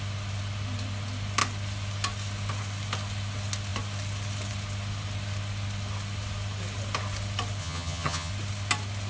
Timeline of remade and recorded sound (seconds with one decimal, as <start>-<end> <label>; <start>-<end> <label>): 0.0-7.6 recorded; 7.6-8.3 remade; 8.3-9.1 recorded